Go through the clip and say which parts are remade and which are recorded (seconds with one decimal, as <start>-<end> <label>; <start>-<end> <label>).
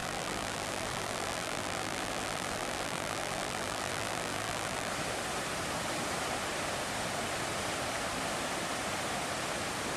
0.0-4.9 remade; 4.9-10.0 recorded